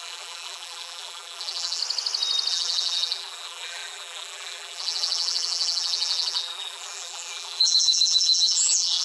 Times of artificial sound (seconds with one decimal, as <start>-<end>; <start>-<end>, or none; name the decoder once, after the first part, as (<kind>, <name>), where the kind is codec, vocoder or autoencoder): 0.0-1.8 (vocoder, BigVGAN v2); 2.5-9.0